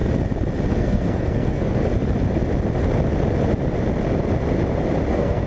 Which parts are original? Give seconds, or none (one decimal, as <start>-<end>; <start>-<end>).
0.0-0.7; 1.8-5.1